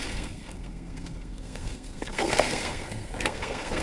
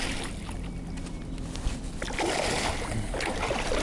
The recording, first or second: second